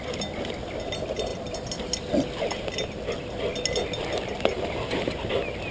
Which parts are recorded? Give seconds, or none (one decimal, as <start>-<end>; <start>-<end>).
0.0-5.7